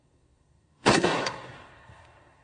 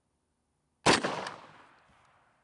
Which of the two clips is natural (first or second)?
second